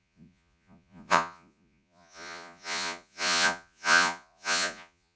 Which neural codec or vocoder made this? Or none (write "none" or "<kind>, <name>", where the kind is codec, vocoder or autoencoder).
vocoder, Vocos